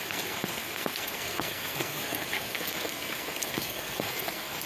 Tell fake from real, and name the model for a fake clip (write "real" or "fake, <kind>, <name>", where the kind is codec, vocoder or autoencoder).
fake, codec, SNAC